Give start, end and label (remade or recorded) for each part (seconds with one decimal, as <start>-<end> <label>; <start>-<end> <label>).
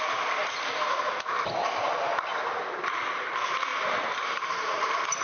0.0-0.4 recorded; 0.4-1.7 remade; 1.7-3.7 recorded; 3.7-5.2 remade